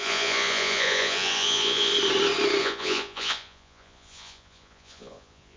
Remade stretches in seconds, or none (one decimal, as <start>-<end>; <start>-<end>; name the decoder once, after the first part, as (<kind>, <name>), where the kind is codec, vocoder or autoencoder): 0.0-1.9 (vocoder, Vocos); 2.6-5.6